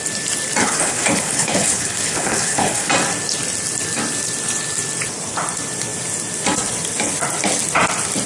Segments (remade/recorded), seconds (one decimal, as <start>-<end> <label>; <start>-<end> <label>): 0.0-0.6 recorded; 0.6-2.9 remade; 2.9-8.3 recorded